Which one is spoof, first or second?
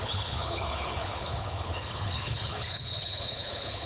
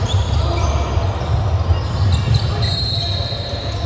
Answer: first